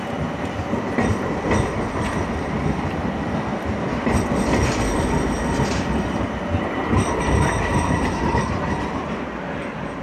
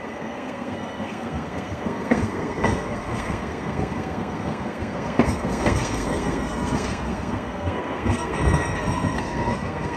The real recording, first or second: first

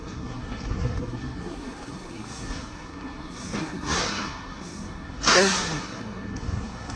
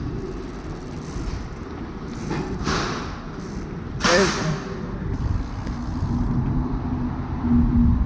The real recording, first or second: second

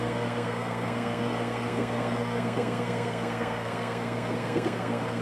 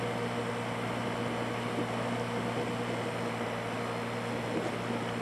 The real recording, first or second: second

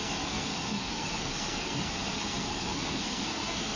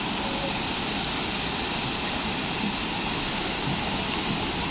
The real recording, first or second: second